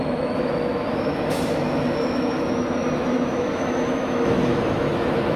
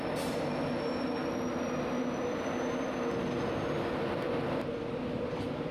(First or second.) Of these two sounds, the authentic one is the second